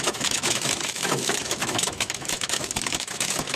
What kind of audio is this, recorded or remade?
remade